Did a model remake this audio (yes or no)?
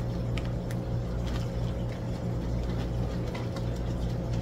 no